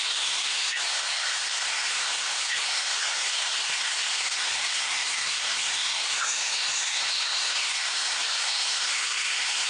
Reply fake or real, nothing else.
fake